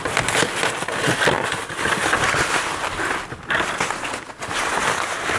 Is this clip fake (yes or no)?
no